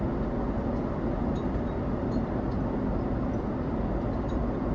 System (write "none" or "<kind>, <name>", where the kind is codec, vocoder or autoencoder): none